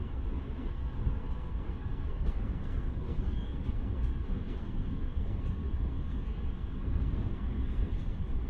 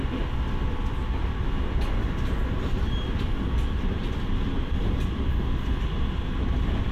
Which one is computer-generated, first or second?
first